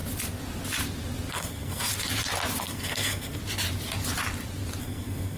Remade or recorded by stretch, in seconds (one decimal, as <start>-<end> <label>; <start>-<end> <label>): 0.0-1.3 recorded; 1.3-1.9 remade; 1.9-2.6 recorded; 2.6-3.4 remade; 3.4-4.8 recorded; 4.8-5.4 remade